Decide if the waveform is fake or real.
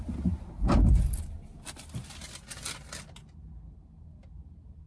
real